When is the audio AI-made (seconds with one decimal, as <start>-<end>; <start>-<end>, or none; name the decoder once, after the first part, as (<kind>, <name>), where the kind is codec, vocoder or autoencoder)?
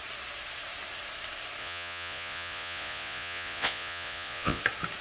1.6-4.6 (vocoder, Vocos)